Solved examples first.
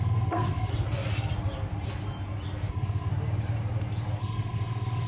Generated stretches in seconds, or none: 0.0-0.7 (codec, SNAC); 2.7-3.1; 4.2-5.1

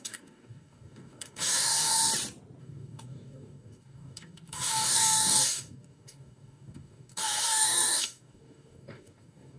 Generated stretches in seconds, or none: 0.0-2.1 (codec, DAC); 2.6-9.6

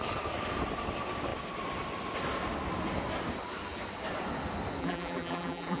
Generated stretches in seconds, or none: 4.8-5.8 (vocoder, BigVGAN v2)

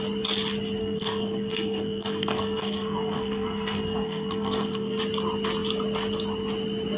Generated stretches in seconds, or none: 0.8-5.0 (codec, SNAC)

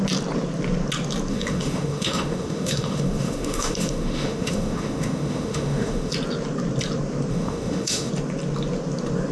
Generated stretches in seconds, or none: 1.3-6.1 (autoencoder, DAC-VAE); 7.3-8.1

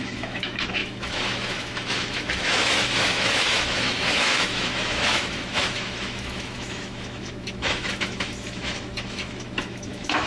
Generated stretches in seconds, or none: 0.0-10.3 (autoencoder, DAC-VAE)

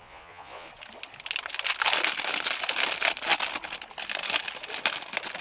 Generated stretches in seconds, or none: 0.0-0.7 (vocoder, Vocos)

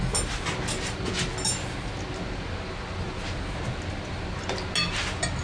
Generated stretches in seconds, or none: none